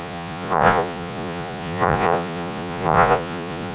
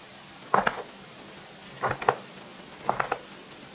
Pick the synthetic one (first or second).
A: first